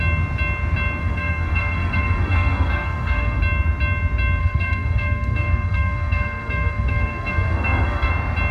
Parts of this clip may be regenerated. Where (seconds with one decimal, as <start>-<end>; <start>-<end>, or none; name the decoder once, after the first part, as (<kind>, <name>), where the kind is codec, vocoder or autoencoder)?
1.0-3.4 (codec, SNAC); 4.4-8.1